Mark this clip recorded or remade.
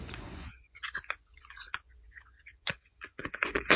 remade